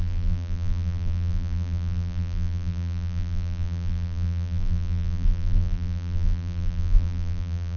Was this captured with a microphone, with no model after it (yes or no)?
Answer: no